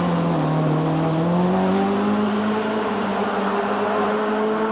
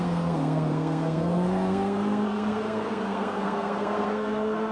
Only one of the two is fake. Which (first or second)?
second